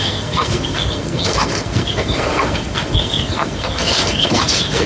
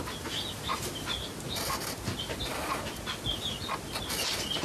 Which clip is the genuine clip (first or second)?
second